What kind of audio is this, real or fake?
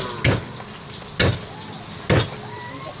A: real